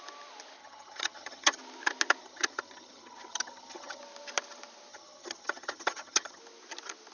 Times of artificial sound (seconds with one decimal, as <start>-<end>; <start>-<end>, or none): 0.6-1.6; 2.2-4.0; 4.9-6.4